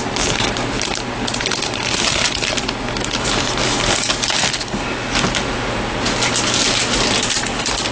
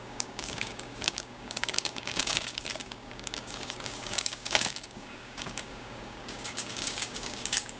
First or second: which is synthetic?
second